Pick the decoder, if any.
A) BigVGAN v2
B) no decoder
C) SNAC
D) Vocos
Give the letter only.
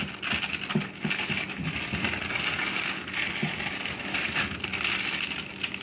B